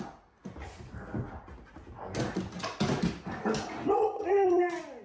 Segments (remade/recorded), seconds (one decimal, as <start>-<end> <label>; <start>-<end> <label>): 0.0-4.0 recorded; 4.0-4.6 remade; 4.6-5.0 recorded